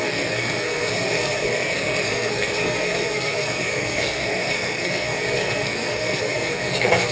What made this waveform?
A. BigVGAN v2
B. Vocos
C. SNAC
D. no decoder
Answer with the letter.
C